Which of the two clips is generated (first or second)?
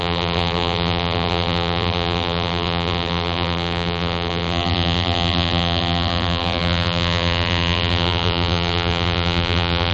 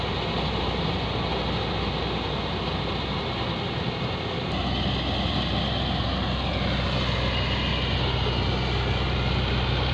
first